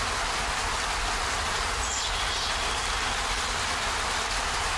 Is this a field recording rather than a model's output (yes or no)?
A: yes